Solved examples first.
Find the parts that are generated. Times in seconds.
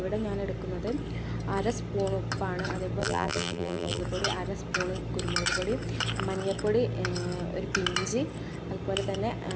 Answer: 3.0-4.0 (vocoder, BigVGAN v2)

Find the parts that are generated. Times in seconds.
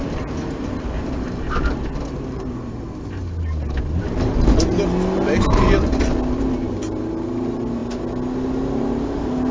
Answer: none